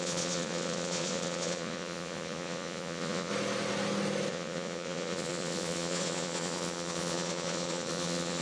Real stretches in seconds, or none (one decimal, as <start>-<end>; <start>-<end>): 3.3-4.3